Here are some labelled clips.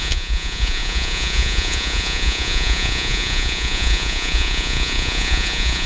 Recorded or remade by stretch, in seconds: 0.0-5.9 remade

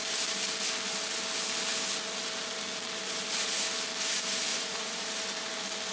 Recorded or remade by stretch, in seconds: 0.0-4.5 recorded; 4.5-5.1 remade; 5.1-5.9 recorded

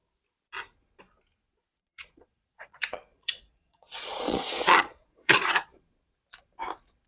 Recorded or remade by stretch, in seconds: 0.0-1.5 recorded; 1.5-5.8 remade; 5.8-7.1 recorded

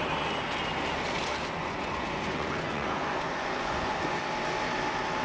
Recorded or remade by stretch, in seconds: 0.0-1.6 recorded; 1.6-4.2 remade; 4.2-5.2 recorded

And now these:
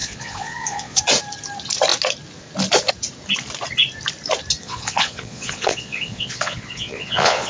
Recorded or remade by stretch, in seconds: 0.0-1.0 remade; 1.0-4.6 recorded; 4.6-7.5 remade

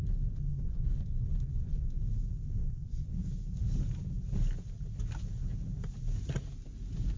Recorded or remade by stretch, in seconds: 0.0-0.5 recorded; 0.5-2.0 remade; 2.0-2.6 recorded; 2.6-3.2 remade; 3.2-7.2 recorded

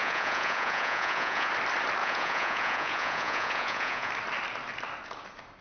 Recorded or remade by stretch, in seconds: 0.0-1.5 remade; 1.5-2.0 recorded; 2.0-4.1 remade; 4.1-5.6 recorded

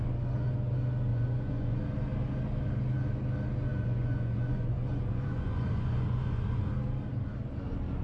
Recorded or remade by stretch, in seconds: 0.0-1.1 recorded; 1.1-1.8 remade; 1.8-3.7 recorded; 3.7-6.7 remade; 6.7-8.0 recorded